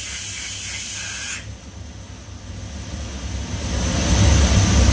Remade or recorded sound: recorded